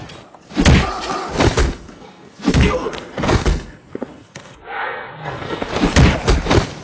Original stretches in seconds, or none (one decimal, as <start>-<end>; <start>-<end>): 0.0-1.6; 5.7-6.8